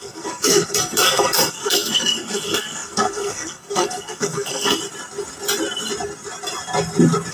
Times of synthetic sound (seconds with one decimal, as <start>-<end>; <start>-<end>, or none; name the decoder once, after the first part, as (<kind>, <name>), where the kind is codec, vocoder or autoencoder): 0.0-4.8 (codec, SNAC)